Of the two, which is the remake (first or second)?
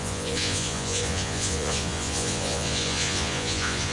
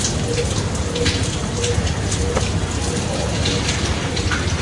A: first